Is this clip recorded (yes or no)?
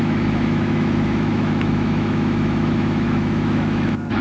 no